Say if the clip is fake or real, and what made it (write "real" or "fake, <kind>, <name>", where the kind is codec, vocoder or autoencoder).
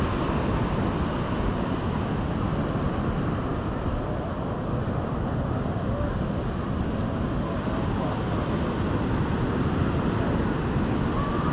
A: real